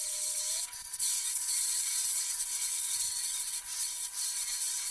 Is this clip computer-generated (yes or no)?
yes